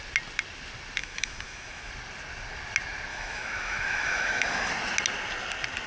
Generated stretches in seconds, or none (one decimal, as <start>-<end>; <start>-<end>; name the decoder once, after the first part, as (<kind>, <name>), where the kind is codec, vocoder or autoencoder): 1.0-1.9 (autoencoder, DAC-VAE); 3.1-4.7